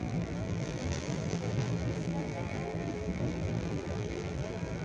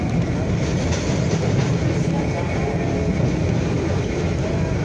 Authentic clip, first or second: second